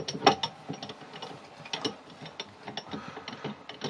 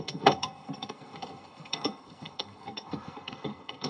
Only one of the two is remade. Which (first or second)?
second